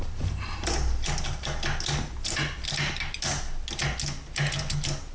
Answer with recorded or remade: recorded